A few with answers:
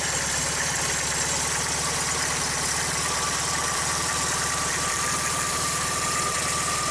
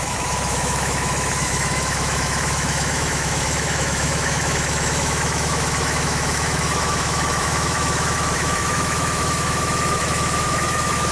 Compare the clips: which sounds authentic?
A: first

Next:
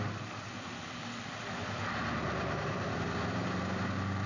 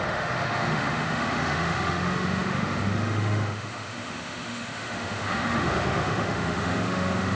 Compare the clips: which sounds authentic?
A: first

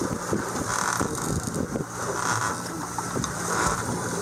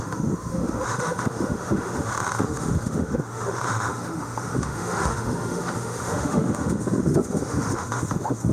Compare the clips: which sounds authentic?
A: first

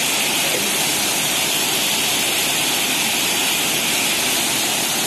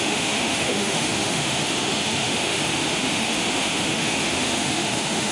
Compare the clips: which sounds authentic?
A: first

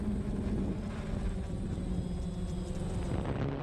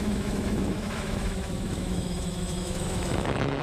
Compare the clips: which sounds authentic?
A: first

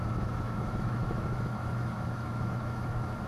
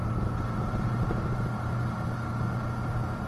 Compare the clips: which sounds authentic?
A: second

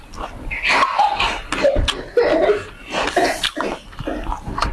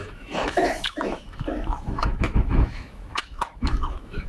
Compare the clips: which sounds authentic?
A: first